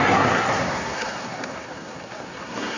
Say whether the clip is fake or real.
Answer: fake